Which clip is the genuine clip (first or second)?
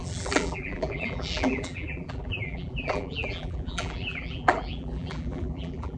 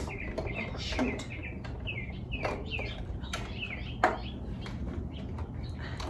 second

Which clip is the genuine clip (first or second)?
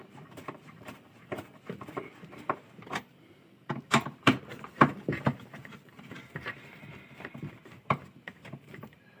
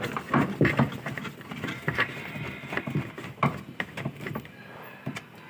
second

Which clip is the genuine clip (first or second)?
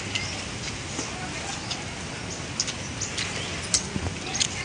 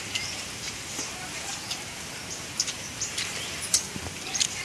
first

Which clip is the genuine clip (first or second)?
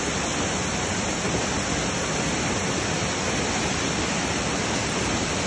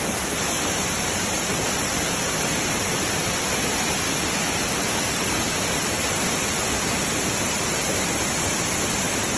first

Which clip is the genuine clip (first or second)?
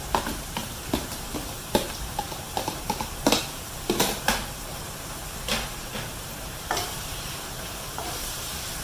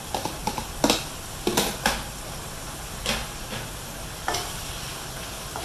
second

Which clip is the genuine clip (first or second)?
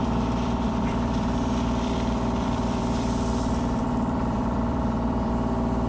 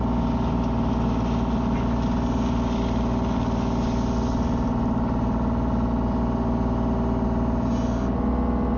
second